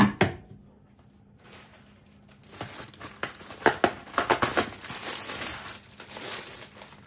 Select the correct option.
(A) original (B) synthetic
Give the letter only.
A